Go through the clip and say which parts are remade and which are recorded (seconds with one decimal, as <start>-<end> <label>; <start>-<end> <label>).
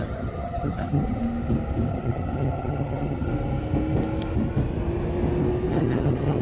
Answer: 0.0-1.2 remade; 1.2-1.9 recorded; 1.9-3.3 remade; 3.3-5.7 recorded; 5.7-6.4 remade